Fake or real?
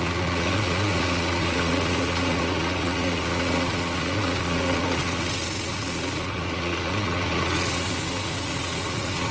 fake